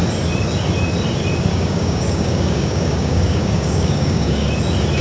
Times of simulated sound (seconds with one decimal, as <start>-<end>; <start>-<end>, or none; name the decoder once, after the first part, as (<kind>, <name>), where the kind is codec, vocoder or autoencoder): 1.5-4.5 (codec, DAC)